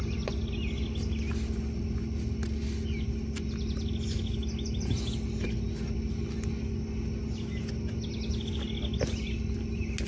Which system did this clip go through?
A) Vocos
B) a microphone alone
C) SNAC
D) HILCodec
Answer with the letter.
B